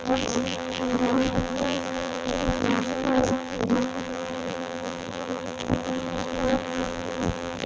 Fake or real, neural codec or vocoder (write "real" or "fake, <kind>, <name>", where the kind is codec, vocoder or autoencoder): fake, vocoder, BigVGAN v2